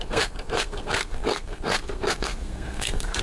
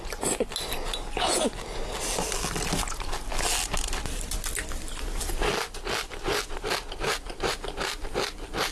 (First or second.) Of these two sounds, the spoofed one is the first